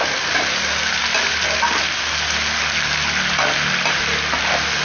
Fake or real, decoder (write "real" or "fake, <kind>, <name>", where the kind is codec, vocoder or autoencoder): real